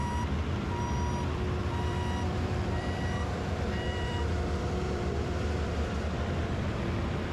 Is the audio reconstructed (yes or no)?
yes